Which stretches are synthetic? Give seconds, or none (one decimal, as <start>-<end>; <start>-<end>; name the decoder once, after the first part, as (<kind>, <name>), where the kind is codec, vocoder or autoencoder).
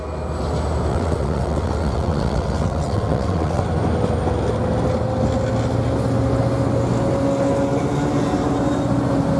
0.9-3.6 (vocoder, WaveNeXt)